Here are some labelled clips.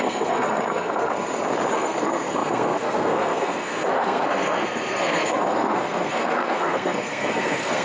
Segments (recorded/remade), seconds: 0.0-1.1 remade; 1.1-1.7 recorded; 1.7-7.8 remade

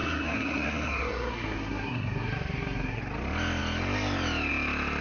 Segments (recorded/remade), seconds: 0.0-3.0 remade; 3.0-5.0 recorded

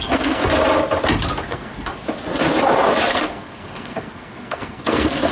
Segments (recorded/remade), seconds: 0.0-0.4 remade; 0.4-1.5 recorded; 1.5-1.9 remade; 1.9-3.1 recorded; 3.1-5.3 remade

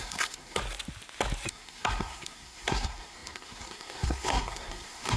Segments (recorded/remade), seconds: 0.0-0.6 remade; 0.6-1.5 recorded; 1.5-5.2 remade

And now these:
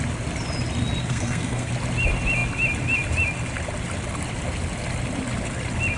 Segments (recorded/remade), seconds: 0.0-1.0 recorded; 1.0-1.7 remade; 1.7-6.0 recorded

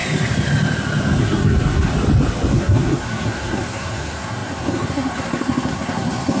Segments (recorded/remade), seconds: 0.0-1.2 recorded; 1.2-1.9 remade; 1.9-2.5 recorded; 2.5-6.4 remade

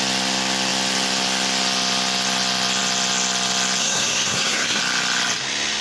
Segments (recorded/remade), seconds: 0.0-3.8 recorded; 3.8-4.8 remade; 4.8-5.8 recorded